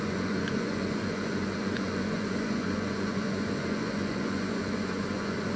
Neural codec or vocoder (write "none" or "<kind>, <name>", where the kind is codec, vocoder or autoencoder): vocoder, Vocos